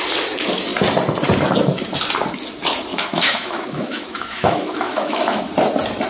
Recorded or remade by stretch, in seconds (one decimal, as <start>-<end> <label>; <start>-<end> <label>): 0.0-2.9 recorded; 2.9-5.4 remade; 5.4-6.1 recorded